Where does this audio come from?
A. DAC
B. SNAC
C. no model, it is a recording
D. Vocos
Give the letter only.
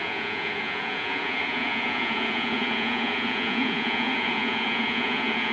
D